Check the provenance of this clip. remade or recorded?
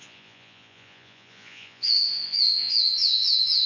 remade